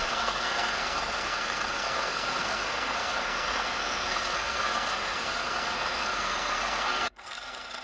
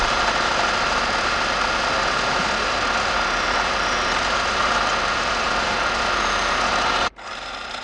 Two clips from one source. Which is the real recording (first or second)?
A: second